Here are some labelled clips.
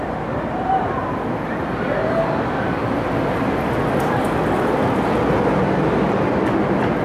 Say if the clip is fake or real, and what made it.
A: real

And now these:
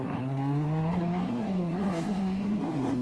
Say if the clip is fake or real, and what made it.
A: fake, codec, SNAC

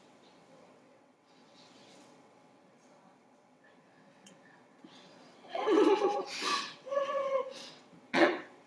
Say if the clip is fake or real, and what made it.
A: fake, vocoder, WaveNeXt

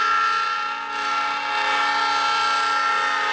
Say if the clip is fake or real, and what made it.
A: real